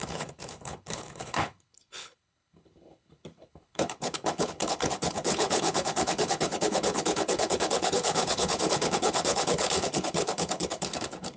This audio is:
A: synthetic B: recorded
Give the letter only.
A